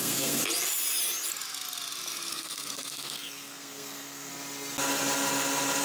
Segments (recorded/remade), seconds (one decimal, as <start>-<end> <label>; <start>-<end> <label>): 0.0-0.4 remade; 0.4-2.3 recorded; 2.3-4.3 remade; 4.3-5.8 recorded